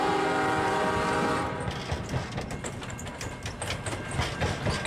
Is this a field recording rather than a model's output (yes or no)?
yes